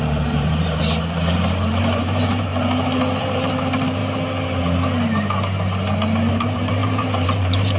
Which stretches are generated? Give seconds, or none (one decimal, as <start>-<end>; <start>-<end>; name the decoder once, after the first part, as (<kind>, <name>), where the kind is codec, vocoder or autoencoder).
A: 0.0-2.5 (vocoder, BigVGAN v2); 3.2-4.0; 6.3-7.8